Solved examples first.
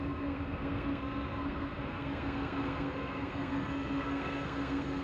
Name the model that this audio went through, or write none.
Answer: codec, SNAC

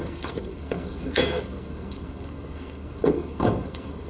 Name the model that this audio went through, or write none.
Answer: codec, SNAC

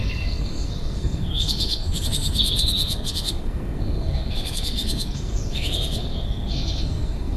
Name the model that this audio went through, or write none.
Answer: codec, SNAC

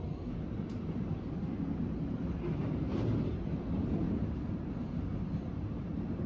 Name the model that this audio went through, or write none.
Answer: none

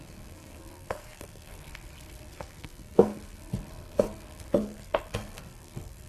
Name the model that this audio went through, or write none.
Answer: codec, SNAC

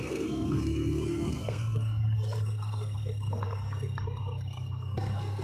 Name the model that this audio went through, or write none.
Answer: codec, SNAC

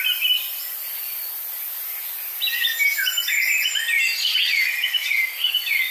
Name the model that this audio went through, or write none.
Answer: none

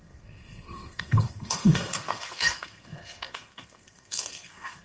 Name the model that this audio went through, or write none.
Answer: codec, SNAC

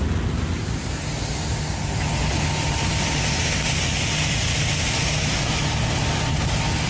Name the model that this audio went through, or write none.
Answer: none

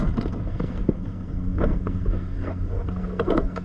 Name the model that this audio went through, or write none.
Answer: codec, SNAC